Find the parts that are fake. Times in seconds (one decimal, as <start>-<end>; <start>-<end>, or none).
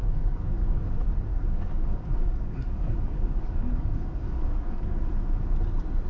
0.0-0.8; 1.3-5.0